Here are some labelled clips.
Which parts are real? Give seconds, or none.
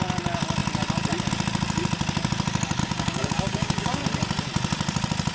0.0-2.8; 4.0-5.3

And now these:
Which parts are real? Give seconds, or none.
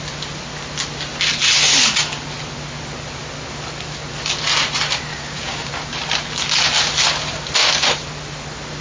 0.0-5.1; 5.7-8.8